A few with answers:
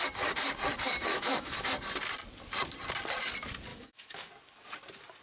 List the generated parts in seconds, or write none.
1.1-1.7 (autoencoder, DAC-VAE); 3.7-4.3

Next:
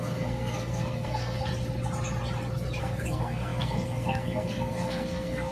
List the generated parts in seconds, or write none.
0.0-1.5 (codec, SNAC); 2.8-5.5

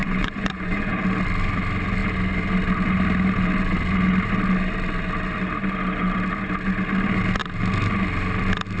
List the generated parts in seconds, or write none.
0.0-0.9 (vocoder, Vocos)

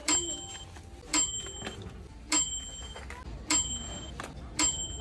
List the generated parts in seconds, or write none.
none

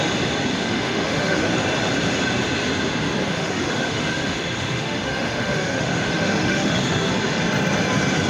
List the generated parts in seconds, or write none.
0.5-1.5 (autoencoder, DAC-VAE); 3.3-7.1

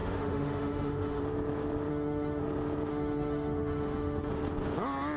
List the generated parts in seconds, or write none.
0.0-1.2 (autoencoder, DAC-VAE); 1.9-2.4; 2.9-4.3

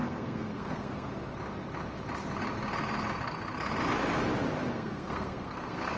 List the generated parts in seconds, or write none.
0.0-1.1 (codec, SNAC); 4.7-6.0

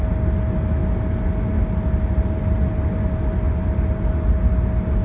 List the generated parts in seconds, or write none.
none